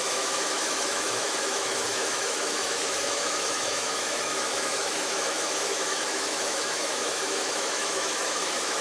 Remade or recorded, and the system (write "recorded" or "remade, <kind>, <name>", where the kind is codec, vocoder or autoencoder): remade, autoencoder, DAC-VAE